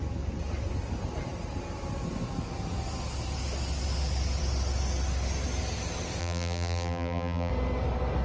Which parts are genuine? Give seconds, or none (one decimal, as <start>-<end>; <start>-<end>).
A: 0.0-6.2; 7.5-8.2